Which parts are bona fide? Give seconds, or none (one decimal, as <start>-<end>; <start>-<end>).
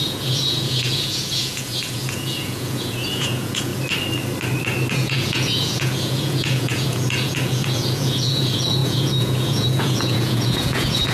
3.7-4.9